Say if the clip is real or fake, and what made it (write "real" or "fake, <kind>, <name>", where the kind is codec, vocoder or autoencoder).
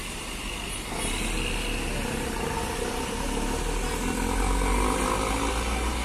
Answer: real